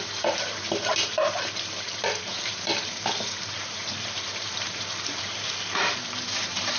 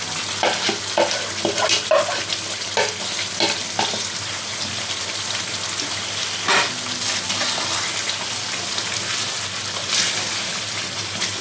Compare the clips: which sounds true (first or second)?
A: second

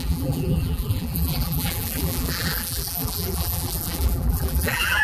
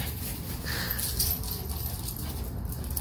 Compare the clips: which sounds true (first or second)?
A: second